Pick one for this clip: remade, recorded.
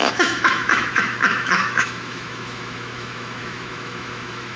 remade